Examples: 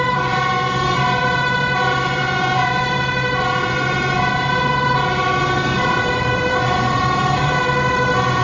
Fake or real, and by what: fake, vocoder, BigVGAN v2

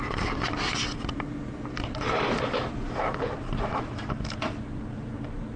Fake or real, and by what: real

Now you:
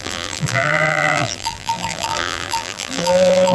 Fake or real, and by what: fake, vocoder, BigVGAN v2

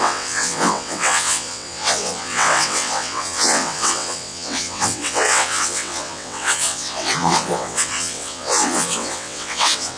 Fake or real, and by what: fake, vocoder, WaveNeXt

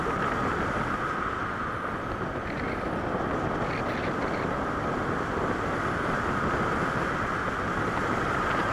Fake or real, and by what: real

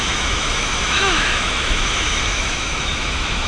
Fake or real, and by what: fake, autoencoder, DAC-VAE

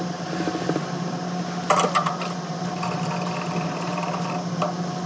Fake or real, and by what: real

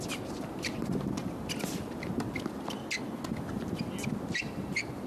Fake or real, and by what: real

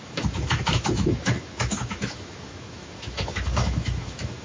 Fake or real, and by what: fake, autoencoder, DAC-VAE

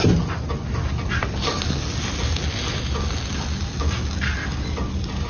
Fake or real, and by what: real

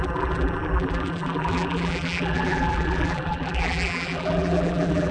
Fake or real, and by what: fake, vocoder, BigVGAN v2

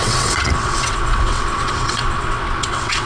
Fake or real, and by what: fake, vocoder, WaveNeXt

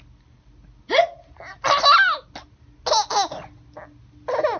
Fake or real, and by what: real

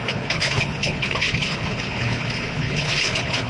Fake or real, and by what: fake, codec, HILCodec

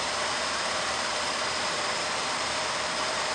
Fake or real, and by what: fake, vocoder, BigVGAN v2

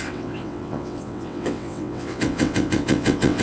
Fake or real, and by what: fake, vocoder, WaveNeXt